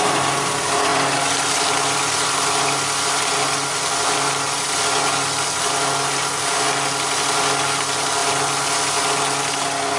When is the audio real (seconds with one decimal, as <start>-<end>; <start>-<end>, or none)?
0.0-10.0